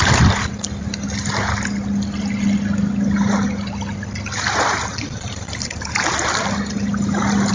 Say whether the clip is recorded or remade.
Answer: recorded